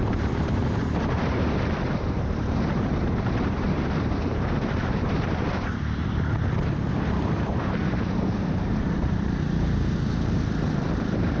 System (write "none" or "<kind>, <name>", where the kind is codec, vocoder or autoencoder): vocoder, BigVGAN v2